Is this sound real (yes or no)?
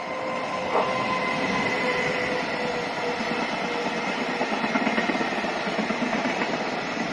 yes